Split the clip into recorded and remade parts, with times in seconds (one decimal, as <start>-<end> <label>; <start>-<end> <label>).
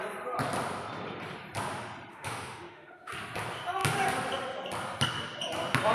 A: 0.0-2.1 recorded; 2.1-3.1 remade; 3.1-5.9 recorded